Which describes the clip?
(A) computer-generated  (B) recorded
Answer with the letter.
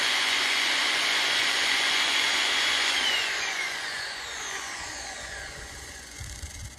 A